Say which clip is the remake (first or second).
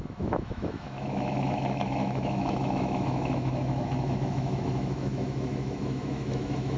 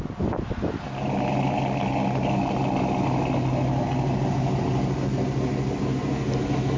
first